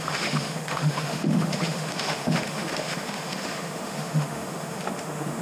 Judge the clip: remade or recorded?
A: remade